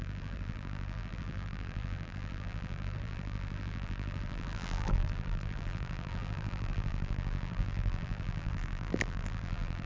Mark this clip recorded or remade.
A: remade